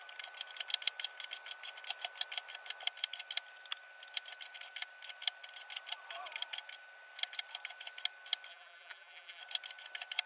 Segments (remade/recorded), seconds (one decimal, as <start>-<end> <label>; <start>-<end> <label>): 0.0-8.5 recorded; 8.5-9.4 remade; 9.4-10.3 recorded